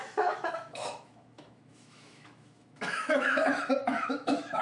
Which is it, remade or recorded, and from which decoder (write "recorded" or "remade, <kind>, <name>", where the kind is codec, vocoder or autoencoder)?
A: remade, autoencoder, DAC-VAE